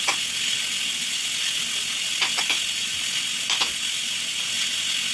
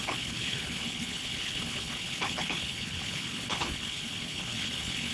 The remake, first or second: second